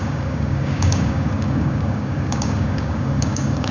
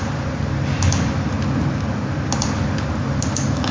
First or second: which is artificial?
first